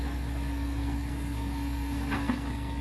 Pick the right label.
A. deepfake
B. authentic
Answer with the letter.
A